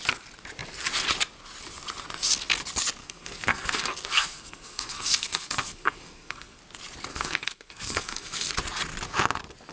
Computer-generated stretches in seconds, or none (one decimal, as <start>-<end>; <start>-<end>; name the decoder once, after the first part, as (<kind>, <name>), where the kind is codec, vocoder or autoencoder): 3.0-6.6 (codec, SNAC); 7.1-8.5